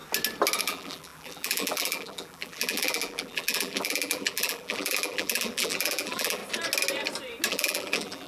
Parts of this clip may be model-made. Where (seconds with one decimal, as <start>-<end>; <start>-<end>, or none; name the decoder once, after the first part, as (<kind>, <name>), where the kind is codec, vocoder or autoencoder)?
0.6-6.4 (vocoder, BigVGAN v2); 7.5-8.3